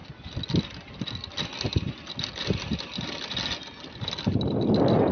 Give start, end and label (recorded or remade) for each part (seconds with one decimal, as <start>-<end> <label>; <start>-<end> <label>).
0.0-5.1 recorded